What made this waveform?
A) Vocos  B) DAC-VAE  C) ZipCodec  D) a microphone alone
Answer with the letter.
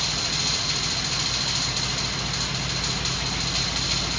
D